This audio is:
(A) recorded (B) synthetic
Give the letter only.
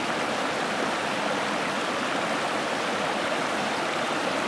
A